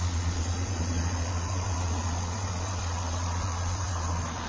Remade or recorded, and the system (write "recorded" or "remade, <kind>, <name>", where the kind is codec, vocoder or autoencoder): remade, vocoder, Vocos